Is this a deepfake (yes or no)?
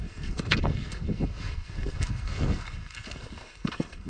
yes